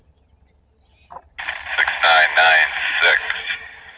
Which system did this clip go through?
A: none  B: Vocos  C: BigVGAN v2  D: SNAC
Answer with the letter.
A